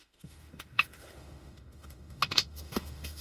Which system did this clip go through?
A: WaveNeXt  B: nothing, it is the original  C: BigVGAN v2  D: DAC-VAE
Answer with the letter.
D